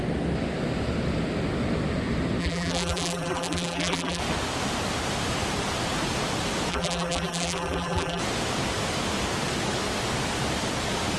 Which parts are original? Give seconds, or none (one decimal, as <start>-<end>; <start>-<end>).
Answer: 0.0-2.4; 4.2-6.7; 8.2-11.2